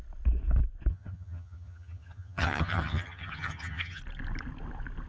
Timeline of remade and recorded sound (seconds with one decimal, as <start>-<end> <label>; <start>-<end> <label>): 0.0-0.9 recorded; 0.9-4.0 remade; 4.0-5.1 recorded